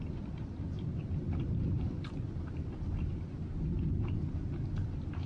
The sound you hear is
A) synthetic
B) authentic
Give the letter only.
B